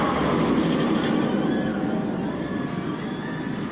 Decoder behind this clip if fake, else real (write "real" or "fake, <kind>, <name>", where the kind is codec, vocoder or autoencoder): real